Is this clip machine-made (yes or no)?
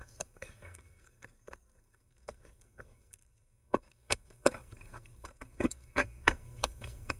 yes